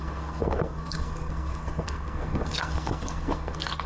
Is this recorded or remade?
remade